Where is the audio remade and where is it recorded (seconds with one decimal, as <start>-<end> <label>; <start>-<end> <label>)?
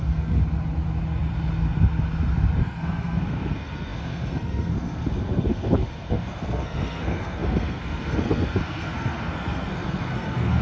0.0-0.4 remade; 0.4-2.6 recorded; 2.6-10.6 remade